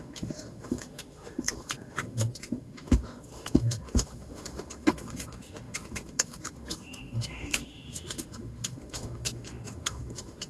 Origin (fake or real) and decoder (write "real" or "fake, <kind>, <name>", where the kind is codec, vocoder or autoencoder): fake, autoencoder, DAC-VAE